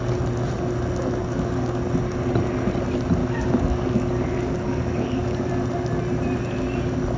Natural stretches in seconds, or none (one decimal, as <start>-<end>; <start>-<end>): 0.0-1.2; 1.8-3.2; 5.5-7.2